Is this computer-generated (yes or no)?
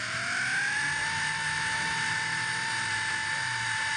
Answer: no